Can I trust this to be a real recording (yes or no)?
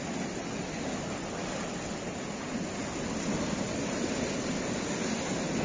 yes